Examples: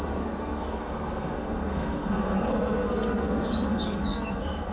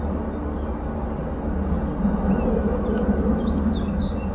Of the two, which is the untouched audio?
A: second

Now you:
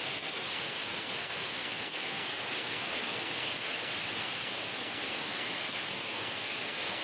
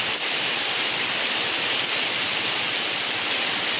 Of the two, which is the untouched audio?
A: second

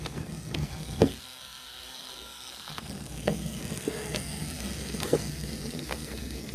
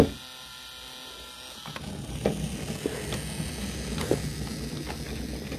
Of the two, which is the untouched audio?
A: second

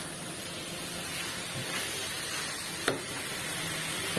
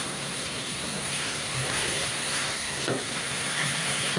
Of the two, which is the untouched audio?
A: first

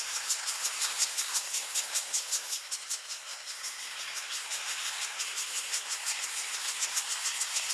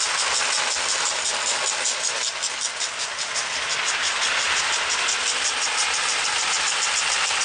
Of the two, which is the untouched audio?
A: second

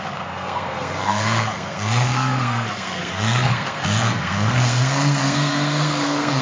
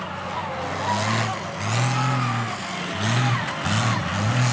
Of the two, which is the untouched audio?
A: second